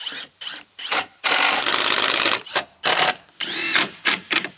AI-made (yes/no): yes